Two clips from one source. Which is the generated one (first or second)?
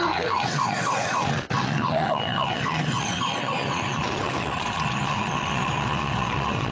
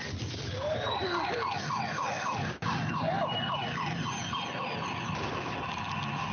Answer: first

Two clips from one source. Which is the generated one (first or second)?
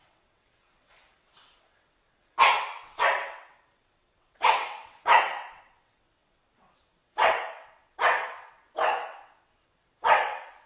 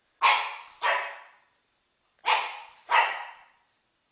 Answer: first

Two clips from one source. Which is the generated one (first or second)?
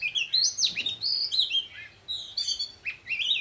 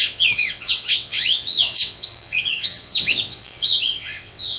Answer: second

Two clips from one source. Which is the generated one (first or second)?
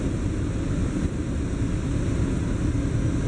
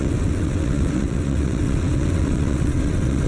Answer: second